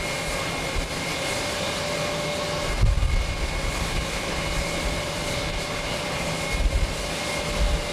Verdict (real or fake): real